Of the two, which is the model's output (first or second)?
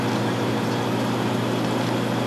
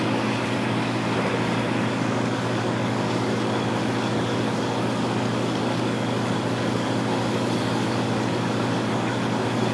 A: second